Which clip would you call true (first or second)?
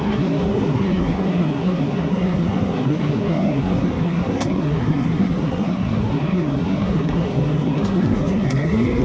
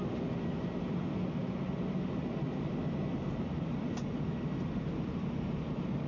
second